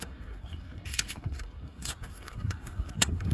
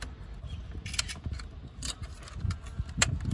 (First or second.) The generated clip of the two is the first